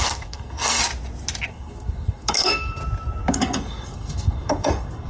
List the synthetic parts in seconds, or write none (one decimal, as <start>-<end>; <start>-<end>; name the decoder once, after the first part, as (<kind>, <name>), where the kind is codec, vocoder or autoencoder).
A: 0.0-0.8 (codec, SNAC); 1.5-2.8; 3.3-5.1

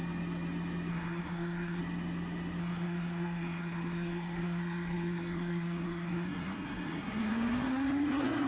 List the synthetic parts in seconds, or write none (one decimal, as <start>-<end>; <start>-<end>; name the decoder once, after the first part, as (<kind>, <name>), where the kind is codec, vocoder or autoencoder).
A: 0.9-1.8 (codec, SNAC); 2.6-8.5

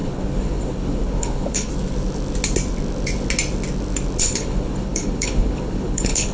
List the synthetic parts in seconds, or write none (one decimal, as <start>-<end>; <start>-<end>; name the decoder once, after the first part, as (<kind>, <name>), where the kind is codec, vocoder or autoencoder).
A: 0.0-1.7 (codec, HILCodec); 4.2-6.3

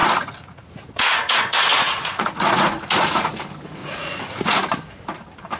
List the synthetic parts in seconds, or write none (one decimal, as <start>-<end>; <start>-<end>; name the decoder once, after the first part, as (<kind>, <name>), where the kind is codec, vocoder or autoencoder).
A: 0.0-3.4 (vocoder, Vocos); 3.8-4.7

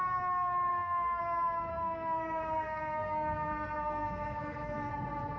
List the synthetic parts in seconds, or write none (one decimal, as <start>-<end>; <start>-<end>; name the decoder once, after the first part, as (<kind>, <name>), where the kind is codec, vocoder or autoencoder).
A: 0.7-1.2 (codec, SNAC); 1.7-4.9

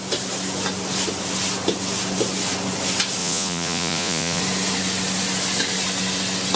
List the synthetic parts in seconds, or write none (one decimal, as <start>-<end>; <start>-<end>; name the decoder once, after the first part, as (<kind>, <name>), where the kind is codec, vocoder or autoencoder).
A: 3.2-4.4 (vocoder, Vocos)

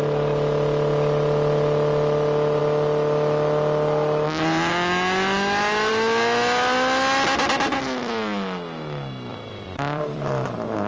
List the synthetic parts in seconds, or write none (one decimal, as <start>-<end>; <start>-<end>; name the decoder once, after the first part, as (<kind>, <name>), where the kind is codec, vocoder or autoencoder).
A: 9.3-10.9 (vocoder, BigVGAN v2)